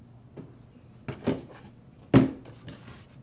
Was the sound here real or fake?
real